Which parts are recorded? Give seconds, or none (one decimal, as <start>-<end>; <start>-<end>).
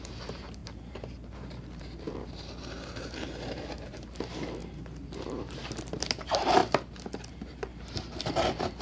6.6-7.3